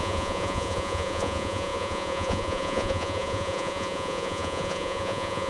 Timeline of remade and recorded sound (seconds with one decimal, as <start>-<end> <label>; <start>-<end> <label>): 0.0-5.5 remade